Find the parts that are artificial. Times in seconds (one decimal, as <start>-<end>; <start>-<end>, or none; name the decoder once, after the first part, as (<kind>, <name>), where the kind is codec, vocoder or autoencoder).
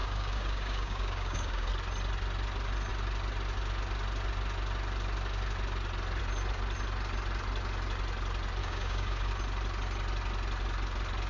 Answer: 0.0-1.7 (codec, DAC); 8.6-9.3